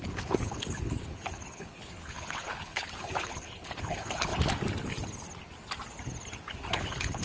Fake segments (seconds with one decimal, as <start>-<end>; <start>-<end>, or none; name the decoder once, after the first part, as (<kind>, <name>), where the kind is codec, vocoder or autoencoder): 0.0-4.3 (codec, HILCodec); 6.5-7.2